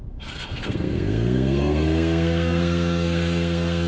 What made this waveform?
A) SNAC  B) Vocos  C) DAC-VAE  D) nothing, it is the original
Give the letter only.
A